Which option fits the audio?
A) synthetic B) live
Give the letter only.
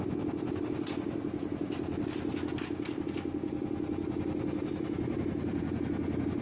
B